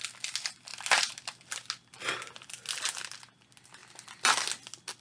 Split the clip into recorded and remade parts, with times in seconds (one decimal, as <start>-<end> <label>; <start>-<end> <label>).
0.0-5.0 recorded